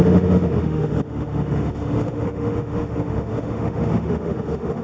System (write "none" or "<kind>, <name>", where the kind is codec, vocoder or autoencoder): autoencoder, DAC-VAE